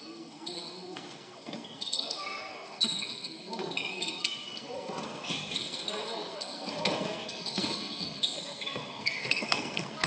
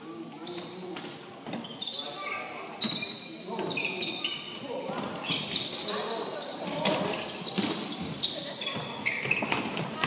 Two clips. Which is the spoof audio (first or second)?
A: first